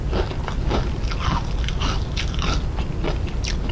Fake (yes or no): no